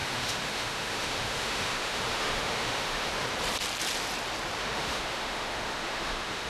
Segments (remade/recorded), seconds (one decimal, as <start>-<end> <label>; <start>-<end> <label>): 0.0-3.1 remade; 3.1-4.6 recorded; 4.6-6.5 remade